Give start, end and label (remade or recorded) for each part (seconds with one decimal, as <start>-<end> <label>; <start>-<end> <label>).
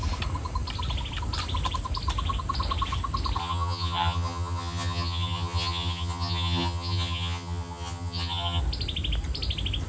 0.0-3.4 recorded; 3.4-8.6 remade; 8.6-9.9 recorded